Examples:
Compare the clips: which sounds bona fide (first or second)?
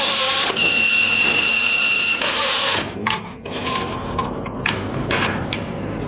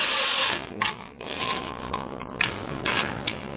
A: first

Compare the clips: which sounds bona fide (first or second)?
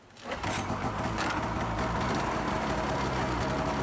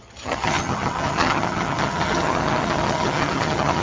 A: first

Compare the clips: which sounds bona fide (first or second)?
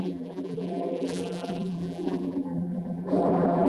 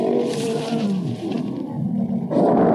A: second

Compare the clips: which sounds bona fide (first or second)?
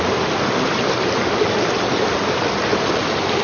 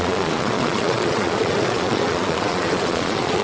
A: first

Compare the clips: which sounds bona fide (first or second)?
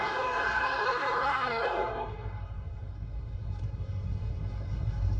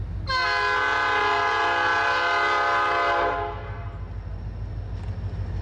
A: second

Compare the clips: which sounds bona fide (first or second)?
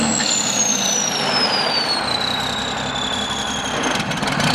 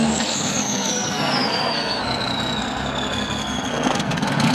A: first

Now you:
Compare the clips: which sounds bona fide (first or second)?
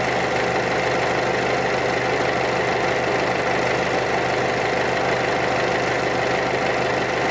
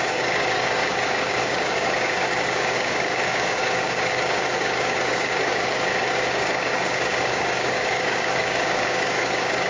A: first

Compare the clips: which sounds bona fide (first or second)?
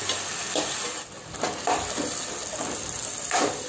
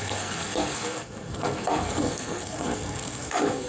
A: first